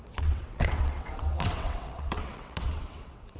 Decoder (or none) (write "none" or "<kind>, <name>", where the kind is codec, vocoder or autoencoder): vocoder, WaveNeXt